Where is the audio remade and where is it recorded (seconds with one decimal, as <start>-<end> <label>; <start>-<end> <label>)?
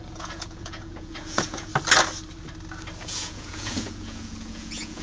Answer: 0.0-1.7 remade; 1.7-3.0 recorded; 3.0-5.0 remade